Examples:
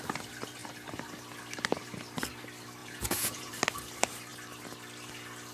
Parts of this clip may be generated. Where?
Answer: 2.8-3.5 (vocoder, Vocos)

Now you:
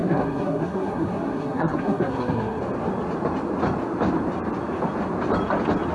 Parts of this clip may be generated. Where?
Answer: 0.0-2.6 (codec, SNAC)

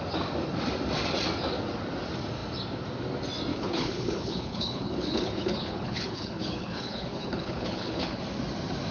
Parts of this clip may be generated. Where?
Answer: 3.5-8.2 (codec, HILCodec)

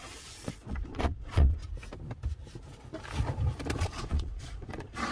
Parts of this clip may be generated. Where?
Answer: 0.0-1.6 (vocoder, Vocos); 3.8-5.1

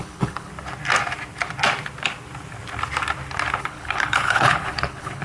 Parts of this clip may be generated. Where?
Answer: 0.0-0.5 (codec, HILCodec); 3.6-5.2

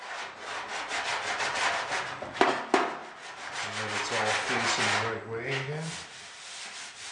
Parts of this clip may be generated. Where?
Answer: 1.1-2.0 (vocoder, BigVGAN v2)

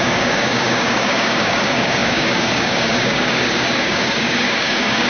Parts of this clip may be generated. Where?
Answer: 0.0-5.1 (codec, DAC)